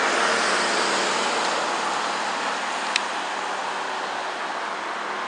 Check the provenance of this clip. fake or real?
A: real